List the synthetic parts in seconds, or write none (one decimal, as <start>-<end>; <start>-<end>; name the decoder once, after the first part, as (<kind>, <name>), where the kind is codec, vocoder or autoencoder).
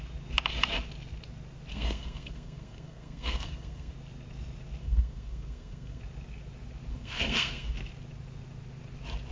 1.7-3.9 (codec, SNAC); 4.8-6.0; 6.9-7.7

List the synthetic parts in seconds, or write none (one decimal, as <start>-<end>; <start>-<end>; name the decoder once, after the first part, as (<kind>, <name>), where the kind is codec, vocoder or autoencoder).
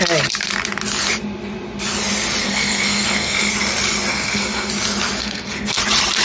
2.4-3.5 (codec, SNAC); 4.1-4.7; 5.2-5.8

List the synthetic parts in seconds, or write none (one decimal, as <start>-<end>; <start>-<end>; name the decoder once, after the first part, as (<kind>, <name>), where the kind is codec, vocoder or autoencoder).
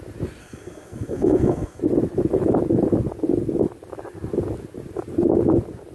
0.4-1.8 (codec, SNAC)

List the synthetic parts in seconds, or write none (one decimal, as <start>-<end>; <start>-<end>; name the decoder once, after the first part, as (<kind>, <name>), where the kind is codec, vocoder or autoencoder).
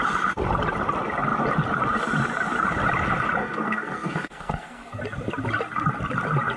3.4-5.0 (codec, SNAC)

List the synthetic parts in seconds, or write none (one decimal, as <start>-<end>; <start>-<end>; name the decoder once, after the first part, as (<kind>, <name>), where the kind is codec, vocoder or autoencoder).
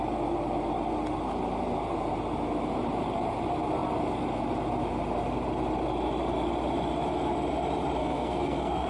8.0-8.9 (codec, SNAC)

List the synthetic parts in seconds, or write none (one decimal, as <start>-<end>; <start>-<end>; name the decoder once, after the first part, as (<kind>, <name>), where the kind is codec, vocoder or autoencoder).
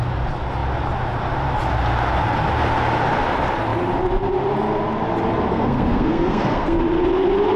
5.5-6.8 (codec, SNAC)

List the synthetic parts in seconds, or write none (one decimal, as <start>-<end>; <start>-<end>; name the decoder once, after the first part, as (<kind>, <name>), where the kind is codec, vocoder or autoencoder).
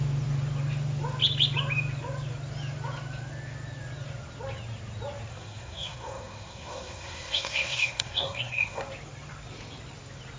5.3-8.8 (codec, SNAC)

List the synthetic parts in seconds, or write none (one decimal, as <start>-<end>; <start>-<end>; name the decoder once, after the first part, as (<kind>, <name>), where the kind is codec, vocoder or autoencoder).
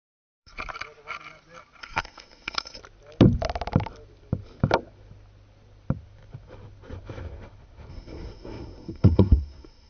0.0-0.5 (codec, SNAC); 1.8-2.8; 7.9-9.9